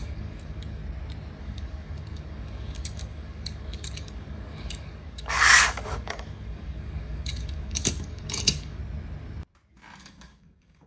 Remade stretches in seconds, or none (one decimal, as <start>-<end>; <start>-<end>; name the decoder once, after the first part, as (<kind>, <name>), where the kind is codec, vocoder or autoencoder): 0.0-0.8 (codec, DAC); 1.4-8.8; 10.0-10.9